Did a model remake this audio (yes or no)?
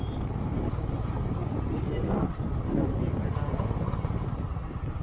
no